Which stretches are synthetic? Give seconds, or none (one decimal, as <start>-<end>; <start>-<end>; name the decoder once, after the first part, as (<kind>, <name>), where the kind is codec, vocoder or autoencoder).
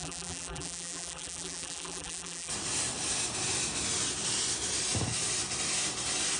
0.0-2.5 (vocoder, BigVGAN v2)